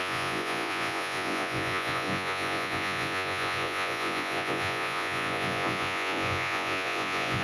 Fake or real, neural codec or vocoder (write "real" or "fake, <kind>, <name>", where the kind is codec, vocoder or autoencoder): fake, vocoder, Vocos